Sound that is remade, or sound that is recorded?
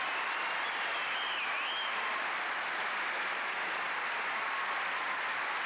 recorded